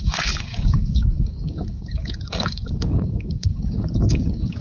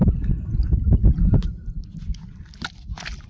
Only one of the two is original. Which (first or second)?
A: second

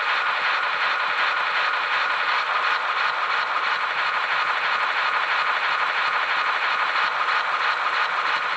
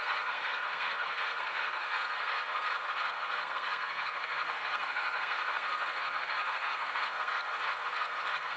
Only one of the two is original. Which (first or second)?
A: first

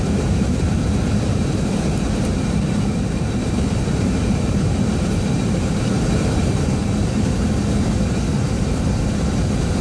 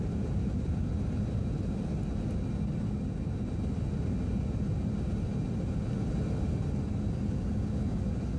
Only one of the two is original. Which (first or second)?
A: second